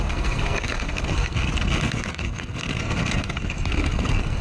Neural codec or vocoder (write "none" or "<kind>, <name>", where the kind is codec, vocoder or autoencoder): codec, SNAC